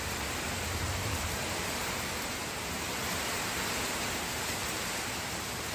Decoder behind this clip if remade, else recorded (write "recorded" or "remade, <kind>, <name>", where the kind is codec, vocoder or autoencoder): remade, vocoder, BigVGAN v2